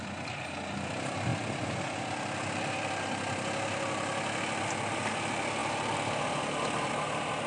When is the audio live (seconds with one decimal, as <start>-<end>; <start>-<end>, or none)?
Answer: 0.0-7.5